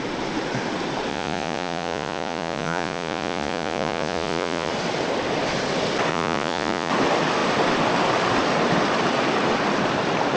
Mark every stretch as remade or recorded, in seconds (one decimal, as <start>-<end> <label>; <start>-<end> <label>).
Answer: 0.0-1.1 recorded; 1.1-4.7 remade; 4.7-6.1 recorded; 6.1-6.9 remade; 6.9-10.4 recorded

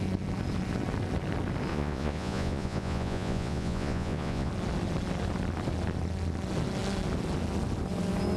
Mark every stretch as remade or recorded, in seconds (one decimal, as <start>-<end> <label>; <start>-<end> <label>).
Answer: 0.0-1.7 recorded; 1.7-4.5 remade; 4.5-8.4 recorded

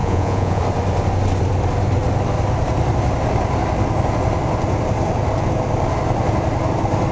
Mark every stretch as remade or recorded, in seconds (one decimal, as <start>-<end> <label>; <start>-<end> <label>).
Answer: 0.0-0.6 remade; 0.6-7.1 recorded

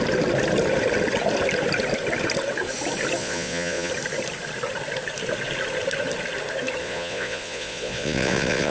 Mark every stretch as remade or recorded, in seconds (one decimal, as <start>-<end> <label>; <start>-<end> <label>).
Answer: 0.0-3.2 recorded; 3.2-3.9 remade; 3.9-6.8 recorded; 6.8-8.7 remade

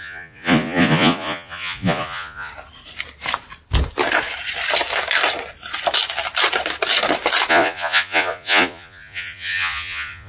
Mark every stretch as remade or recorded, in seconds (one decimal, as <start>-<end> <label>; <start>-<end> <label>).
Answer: 0.0-2.5 remade; 2.5-7.5 recorded; 7.5-10.3 remade